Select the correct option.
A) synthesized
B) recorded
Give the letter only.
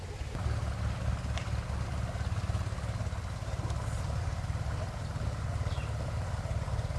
B